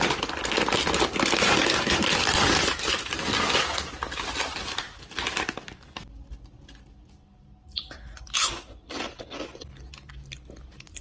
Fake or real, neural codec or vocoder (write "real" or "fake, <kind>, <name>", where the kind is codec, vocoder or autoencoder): real